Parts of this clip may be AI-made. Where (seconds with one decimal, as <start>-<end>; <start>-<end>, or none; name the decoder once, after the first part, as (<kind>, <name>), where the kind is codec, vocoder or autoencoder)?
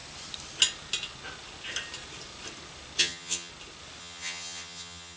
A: 3.0-3.5 (vocoder, HiFi-GAN); 4.0-5.2